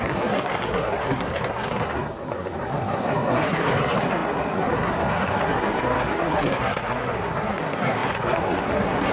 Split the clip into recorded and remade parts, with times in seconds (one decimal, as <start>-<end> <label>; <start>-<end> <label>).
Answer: 0.0-9.1 remade